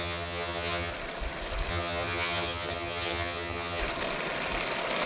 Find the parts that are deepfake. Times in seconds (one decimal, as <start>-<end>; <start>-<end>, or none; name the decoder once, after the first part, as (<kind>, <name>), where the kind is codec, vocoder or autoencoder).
0.0-0.9 (vocoder, HiFi-GAN); 1.7-3.8